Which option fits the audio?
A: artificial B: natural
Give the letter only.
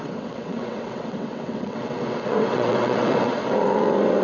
A